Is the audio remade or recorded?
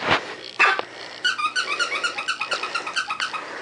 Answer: recorded